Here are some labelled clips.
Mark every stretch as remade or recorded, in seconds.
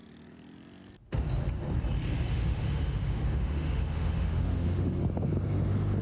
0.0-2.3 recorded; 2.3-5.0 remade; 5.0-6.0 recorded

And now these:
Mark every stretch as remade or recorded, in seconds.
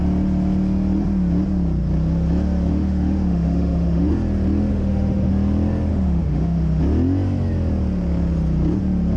0.0-2.7 recorded; 2.7-4.1 remade; 4.1-4.7 recorded; 4.7-5.3 remade; 5.3-5.9 recorded; 5.9-6.8 remade; 6.8-9.2 recorded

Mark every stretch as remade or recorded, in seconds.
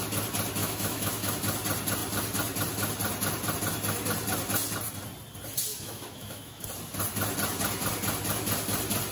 0.0-0.6 recorded; 0.6-1.3 remade; 1.3-5.7 recorded; 5.7-6.6 remade; 6.6-9.1 recorded